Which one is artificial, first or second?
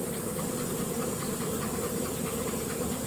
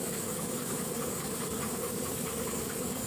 second